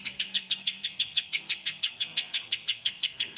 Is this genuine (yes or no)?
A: no